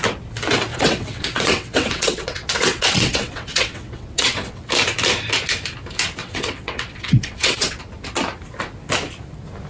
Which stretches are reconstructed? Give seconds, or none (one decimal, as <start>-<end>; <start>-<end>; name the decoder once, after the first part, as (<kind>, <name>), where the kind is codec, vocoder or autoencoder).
0.7-4.7 (vocoder, WaveNeXt); 6.2-7.8